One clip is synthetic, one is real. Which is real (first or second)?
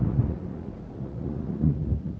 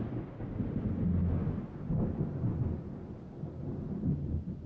second